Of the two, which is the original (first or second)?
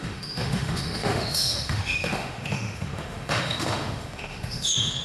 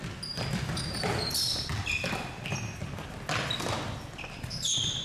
second